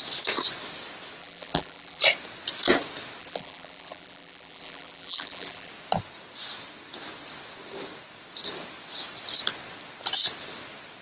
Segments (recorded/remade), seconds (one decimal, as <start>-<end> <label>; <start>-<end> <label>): 0.0-1.2 recorded; 1.2-2.0 remade; 2.0-3.2 recorded; 3.2-5.7 remade; 5.7-11.0 recorded